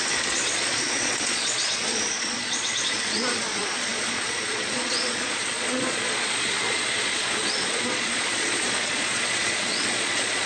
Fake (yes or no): yes